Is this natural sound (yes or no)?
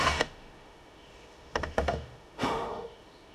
no